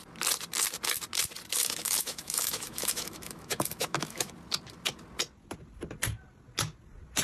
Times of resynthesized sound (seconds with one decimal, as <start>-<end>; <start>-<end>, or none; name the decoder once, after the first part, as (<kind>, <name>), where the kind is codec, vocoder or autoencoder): 1.6-4.3 (autoencoder, DAC-VAE)